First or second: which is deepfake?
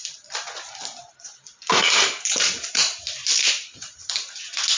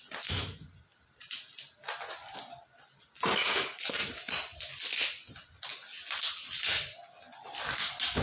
first